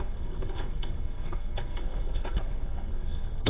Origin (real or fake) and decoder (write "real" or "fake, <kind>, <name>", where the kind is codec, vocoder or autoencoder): fake, codec, SNAC